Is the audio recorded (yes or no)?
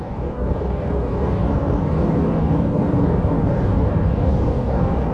no